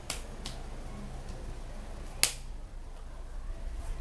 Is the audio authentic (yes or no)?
yes